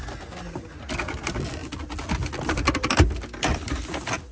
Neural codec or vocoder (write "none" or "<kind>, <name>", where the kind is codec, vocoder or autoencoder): none